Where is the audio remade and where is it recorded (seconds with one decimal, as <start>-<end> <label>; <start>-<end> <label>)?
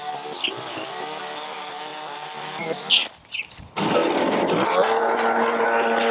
0.0-6.1 recorded